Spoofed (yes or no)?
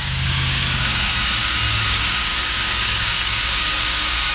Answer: yes